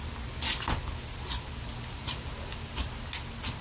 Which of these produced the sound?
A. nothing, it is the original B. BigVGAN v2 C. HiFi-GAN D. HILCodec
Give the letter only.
A